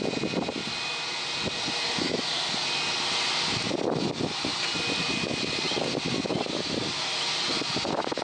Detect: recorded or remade recorded